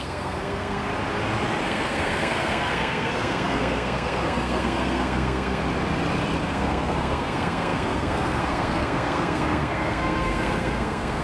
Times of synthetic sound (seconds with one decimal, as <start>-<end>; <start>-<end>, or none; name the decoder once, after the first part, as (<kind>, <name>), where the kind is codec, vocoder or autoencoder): 0.0-0.9 (codec, SNAC); 1.6-5.6; 6.4-11.2